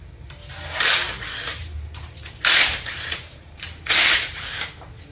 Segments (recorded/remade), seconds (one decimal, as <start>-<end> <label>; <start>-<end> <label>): 0.0-1.5 recorded; 1.5-4.6 remade; 4.6-5.1 recorded